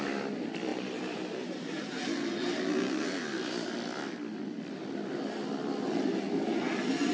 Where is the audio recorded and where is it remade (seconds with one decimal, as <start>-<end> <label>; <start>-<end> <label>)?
0.0-0.7 recorded; 0.7-1.8 remade; 1.8-7.1 recorded